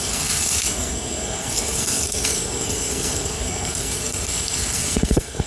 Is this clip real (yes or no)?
no